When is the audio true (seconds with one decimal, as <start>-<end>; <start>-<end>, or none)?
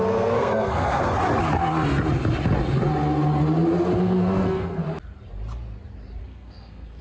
1.2-4.0; 4.8-6.2